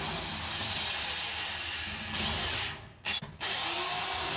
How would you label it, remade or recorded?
recorded